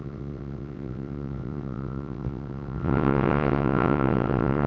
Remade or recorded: remade